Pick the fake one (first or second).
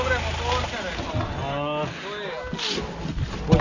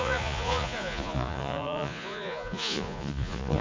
second